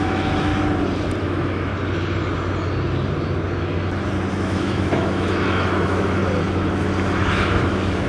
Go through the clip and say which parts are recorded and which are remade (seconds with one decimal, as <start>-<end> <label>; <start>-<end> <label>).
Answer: 0.0-0.5 remade; 0.5-1.2 recorded; 1.2-1.7 remade; 1.7-4.3 recorded; 4.3-6.2 remade; 6.2-7.3 recorded; 7.3-8.1 remade